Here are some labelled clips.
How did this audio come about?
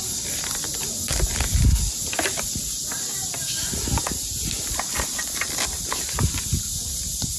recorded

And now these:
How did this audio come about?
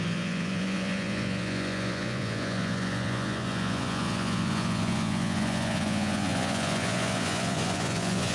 remade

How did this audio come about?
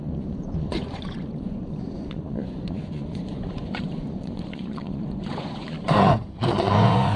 remade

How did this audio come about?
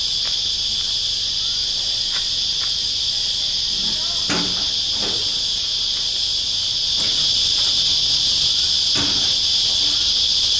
recorded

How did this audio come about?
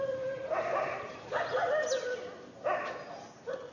recorded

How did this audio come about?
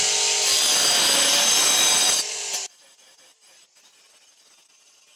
recorded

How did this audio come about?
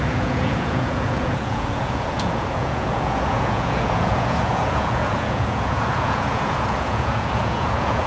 remade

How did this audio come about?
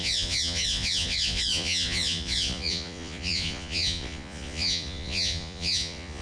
remade